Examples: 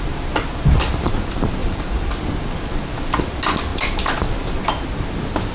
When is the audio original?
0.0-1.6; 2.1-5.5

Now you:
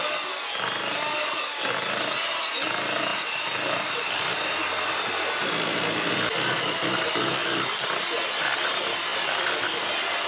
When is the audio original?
0.0-3.1; 4.3-9.1; 9.9-10.3

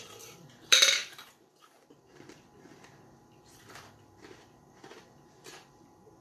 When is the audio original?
none

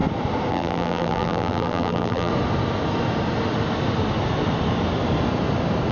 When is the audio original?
0.0-0.5; 2.3-5.9

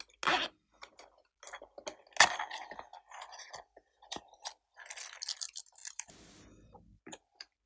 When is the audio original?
0.0-5.8

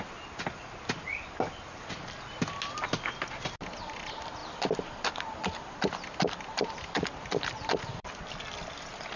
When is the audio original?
0.0-4.4; 7.8-9.2

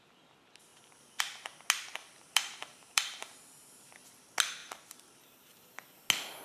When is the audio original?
0.0-2.0; 3.8-4.6; 5.7-6.4

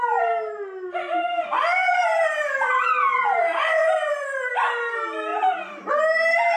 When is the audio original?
0.0-1.8; 4.5-5.3; 5.9-6.6